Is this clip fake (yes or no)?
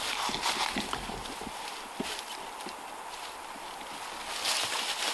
no